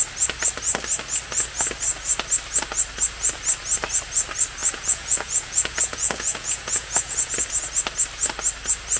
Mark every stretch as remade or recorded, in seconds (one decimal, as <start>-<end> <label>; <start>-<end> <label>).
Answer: 0.0-4.6 recorded; 4.6-7.3 remade; 7.3-9.0 recorded